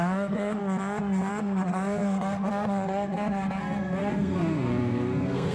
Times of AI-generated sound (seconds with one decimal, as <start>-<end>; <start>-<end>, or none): 0.0-0.6; 1.3-5.5